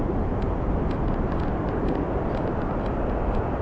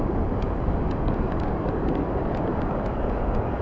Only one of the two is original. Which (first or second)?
first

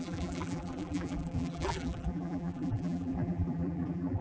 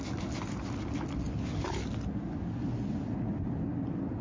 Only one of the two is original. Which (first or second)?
second